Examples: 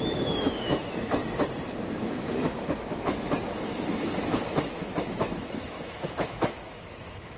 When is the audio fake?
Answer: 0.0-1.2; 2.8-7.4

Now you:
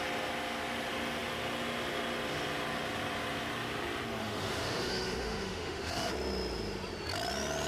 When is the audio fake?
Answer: 4.2-6.1

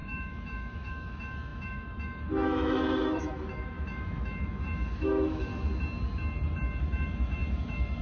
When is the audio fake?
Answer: 0.0-5.5; 6.8-8.0

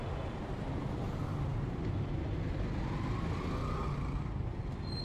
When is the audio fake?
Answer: none

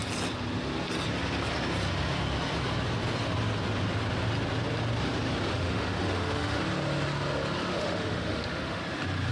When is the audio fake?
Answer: 5.5-6.6; 7.7-8.8

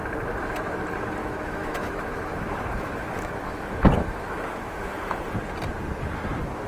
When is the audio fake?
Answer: 1.2-5.2

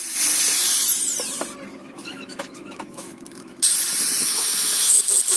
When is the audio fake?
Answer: 1.7-3.6; 4.2-5.0